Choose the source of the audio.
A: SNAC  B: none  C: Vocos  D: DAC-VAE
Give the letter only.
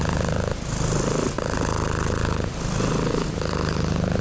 B